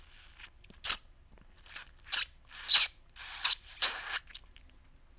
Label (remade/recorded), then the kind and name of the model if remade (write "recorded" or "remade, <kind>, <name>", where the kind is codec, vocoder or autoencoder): recorded